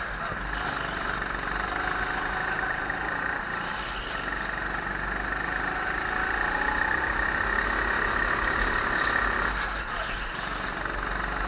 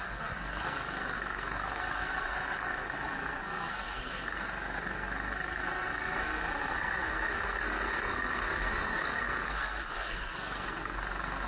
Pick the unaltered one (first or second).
first